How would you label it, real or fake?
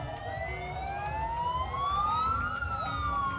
real